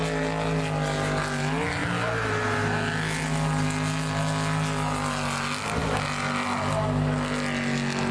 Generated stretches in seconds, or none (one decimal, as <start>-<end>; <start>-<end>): none